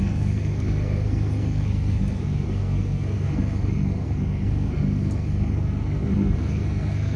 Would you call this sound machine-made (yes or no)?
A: yes